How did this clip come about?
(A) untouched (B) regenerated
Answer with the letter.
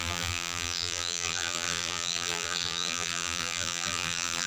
B